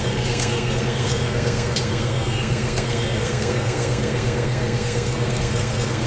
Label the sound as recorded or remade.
remade